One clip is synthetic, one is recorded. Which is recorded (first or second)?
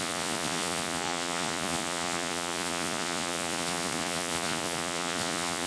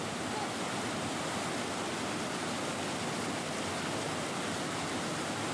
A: second